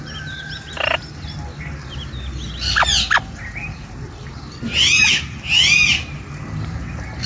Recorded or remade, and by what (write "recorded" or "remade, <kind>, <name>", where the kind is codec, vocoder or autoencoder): recorded